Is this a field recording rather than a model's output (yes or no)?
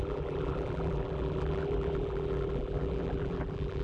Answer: no